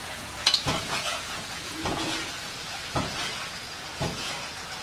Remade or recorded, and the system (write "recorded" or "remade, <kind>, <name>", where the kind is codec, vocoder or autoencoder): remade, vocoder, Vocos